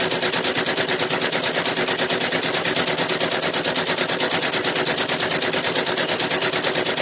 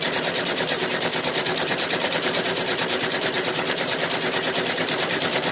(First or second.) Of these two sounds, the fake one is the second